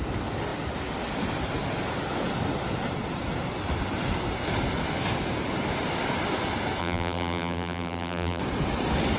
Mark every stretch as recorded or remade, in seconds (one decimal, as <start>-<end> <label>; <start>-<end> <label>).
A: 0.0-6.8 recorded; 6.8-8.4 remade; 8.4-9.2 recorded